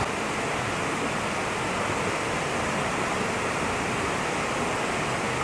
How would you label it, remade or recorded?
recorded